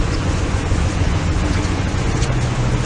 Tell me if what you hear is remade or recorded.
remade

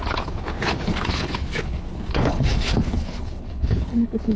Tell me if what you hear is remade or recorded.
remade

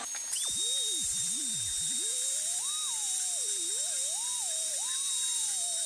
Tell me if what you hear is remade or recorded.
recorded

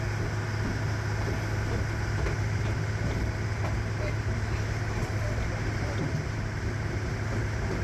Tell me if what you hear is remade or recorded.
recorded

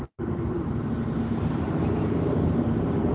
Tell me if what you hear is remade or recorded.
remade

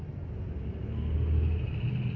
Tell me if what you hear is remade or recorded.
recorded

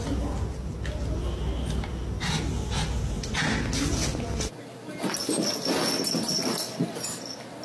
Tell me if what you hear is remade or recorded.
recorded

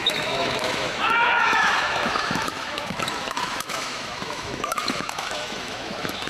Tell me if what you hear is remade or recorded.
remade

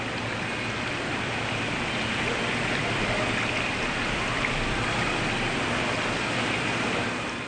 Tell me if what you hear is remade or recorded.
recorded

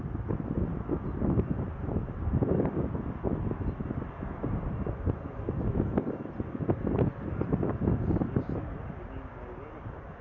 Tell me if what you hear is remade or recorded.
recorded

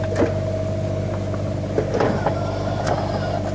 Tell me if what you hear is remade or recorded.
recorded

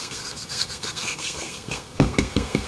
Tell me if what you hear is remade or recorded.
remade